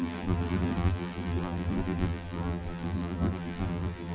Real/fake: fake